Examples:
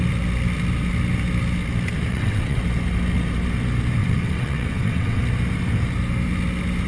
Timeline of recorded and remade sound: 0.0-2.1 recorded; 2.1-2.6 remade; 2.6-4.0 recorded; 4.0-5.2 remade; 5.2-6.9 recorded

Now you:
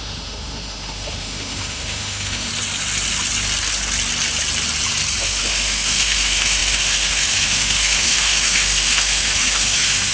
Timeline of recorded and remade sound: 0.0-2.5 remade; 2.5-5.2 recorded; 5.2-10.1 remade

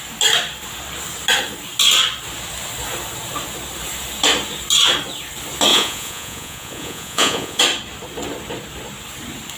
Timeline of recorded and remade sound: 0.0-5.7 recorded; 5.7-7.6 remade; 7.6-9.6 recorded

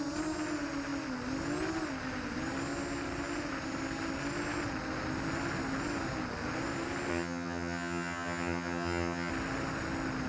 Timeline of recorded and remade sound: 0.0-7.1 recorded; 7.1-9.3 remade; 9.3-10.3 recorded

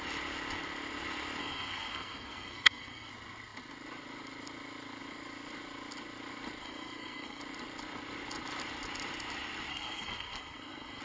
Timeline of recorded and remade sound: 0.0-1.4 recorded; 1.4-3.1 remade; 3.1-6.6 recorded; 6.6-7.4 remade; 7.4-9.7 recorded; 9.7-11.0 remade